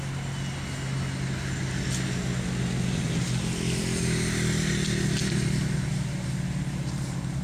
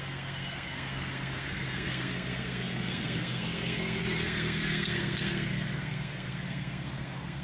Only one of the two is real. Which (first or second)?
first